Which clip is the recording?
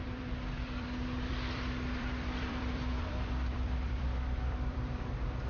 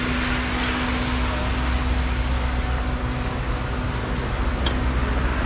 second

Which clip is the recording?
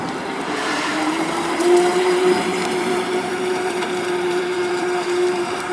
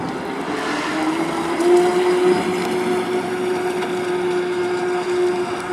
second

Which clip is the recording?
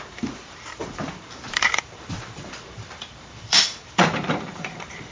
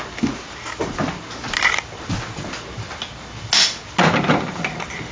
second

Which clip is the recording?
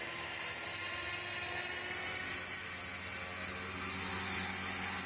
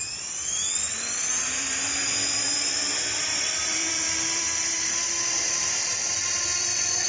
first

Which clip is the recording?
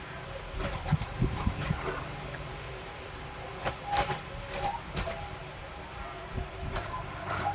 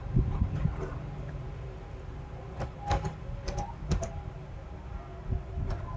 second